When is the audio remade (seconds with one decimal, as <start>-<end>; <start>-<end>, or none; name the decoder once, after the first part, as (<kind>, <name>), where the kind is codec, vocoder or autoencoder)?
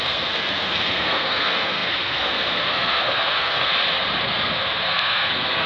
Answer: 0.0-3.7 (codec, SNAC); 4.2-5.7